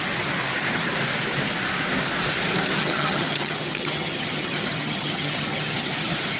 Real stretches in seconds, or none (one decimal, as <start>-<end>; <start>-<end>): 0.0-2.8; 5.9-6.4